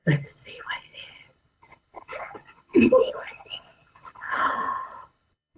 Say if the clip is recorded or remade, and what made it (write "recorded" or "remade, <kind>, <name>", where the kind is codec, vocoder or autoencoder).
remade, codec, HILCodec